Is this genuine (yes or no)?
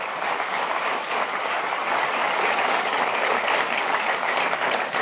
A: no